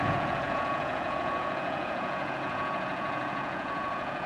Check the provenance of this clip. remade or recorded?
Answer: remade